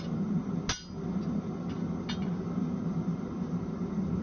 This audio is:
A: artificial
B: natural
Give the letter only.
B